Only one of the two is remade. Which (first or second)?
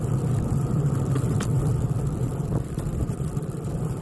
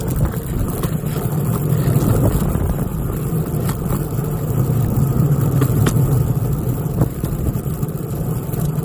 first